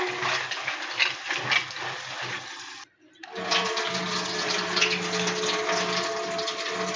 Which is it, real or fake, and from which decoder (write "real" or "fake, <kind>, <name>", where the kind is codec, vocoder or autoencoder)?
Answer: real